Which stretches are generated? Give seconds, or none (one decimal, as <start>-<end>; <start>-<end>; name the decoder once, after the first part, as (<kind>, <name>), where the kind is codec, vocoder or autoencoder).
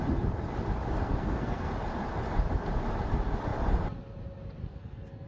1.0-1.7 (codec, SNAC); 4.6-5.3